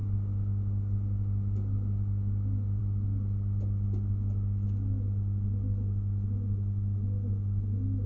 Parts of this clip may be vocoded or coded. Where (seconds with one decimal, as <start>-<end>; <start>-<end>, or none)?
none